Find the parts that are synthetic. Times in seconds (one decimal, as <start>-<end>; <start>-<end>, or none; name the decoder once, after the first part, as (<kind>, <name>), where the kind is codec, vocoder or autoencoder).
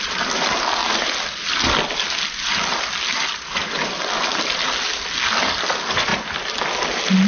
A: none